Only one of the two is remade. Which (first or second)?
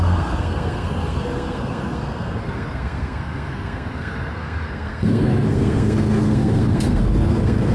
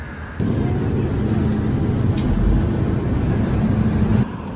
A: first